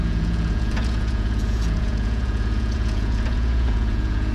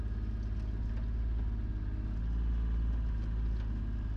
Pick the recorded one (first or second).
second